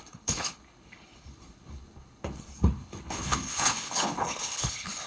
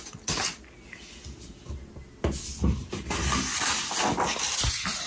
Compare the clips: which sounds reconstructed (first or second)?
first